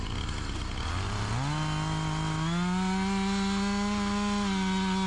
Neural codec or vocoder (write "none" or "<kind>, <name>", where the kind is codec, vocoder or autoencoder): none